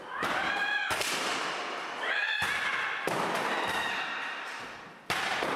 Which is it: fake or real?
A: real